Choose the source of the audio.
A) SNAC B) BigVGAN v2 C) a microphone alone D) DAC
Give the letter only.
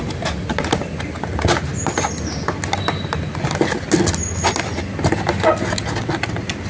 C